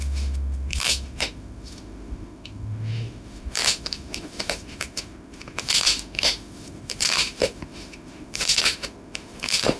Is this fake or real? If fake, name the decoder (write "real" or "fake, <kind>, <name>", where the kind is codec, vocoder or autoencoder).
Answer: fake, autoencoder, DAC-VAE